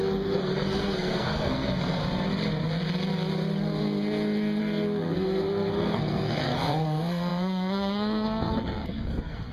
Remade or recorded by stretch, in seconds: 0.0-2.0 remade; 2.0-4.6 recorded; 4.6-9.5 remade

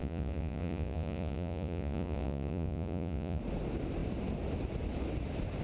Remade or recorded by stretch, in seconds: 0.0-3.4 remade; 3.4-5.6 recorded